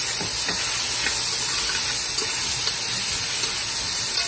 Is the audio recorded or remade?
recorded